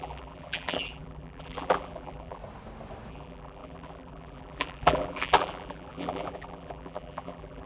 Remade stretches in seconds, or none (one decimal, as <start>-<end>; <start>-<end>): 0.0-2.4; 3.1-7.7

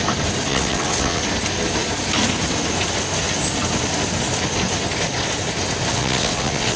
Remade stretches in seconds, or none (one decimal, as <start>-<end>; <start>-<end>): 0.5-1.2; 5.9-6.8

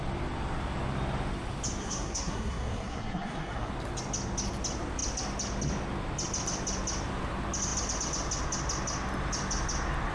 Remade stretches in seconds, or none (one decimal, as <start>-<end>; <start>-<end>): 1.8-3.7

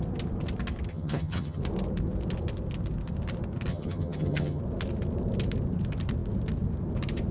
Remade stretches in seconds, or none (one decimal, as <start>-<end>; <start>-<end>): 0.9-1.6; 3.7-4.6

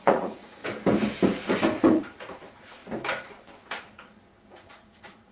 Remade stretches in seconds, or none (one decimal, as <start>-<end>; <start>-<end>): 0.0-0.6; 1.8-2.8; 4.5-5.3